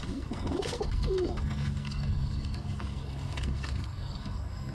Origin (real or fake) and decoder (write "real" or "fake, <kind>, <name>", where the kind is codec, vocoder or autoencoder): fake, codec, SNAC